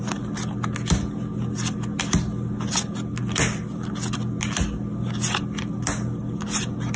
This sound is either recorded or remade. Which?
recorded